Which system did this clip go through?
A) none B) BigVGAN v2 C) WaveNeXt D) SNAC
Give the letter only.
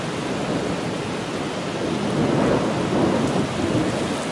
A